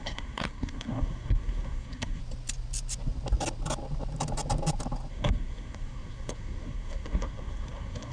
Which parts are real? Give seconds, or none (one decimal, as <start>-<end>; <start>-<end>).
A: 2.2-5.1